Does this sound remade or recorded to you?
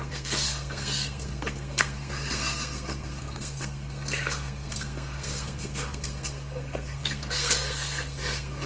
remade